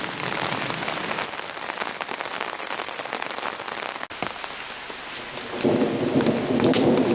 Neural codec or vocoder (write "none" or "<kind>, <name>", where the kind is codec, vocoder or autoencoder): none